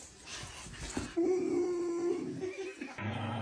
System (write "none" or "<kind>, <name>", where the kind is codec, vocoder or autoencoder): none